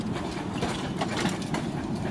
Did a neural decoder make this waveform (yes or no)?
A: yes